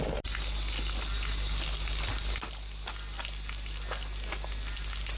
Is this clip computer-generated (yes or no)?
no